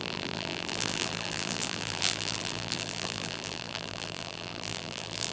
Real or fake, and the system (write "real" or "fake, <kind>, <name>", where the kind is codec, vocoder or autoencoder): fake, vocoder, BigVGAN v2